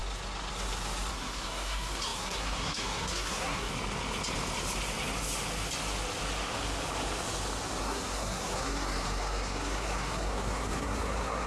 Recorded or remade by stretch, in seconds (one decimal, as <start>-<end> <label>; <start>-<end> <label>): 0.0-1.1 recorded; 1.1-3.7 remade; 3.7-7.8 recorded; 7.8-11.5 remade